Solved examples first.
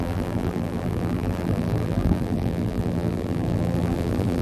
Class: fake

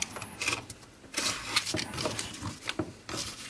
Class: fake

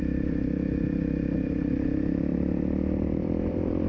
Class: fake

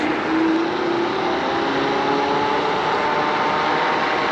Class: real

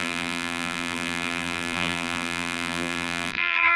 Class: fake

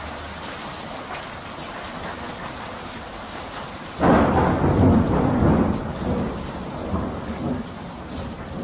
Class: real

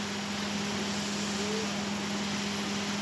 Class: real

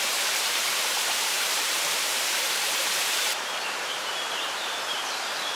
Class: fake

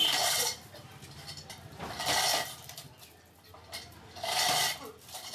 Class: fake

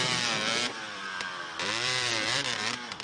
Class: fake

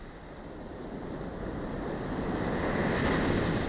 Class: real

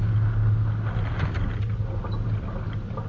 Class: real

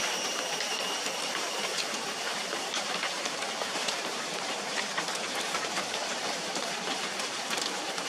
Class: fake